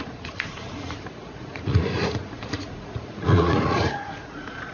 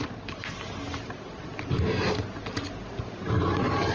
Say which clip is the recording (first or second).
second